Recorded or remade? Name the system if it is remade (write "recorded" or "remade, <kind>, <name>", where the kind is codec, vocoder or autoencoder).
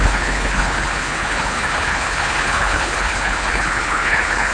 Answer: remade, codec, HILCodec